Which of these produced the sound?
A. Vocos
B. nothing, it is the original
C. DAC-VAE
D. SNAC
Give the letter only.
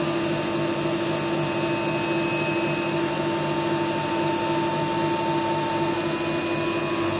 B